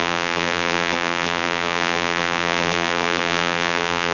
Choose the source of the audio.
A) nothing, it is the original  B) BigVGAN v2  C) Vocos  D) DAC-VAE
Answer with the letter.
B